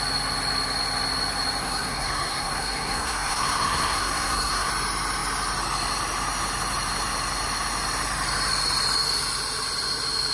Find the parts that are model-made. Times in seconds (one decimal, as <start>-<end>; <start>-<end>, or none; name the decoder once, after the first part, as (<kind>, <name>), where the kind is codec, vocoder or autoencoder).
1.6-4.7 (codec, SNAC)